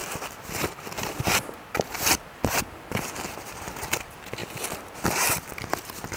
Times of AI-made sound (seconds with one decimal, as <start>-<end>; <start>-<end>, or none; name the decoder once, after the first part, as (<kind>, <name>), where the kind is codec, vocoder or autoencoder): 0.0-3.7 (vocoder, BigVGAN v2)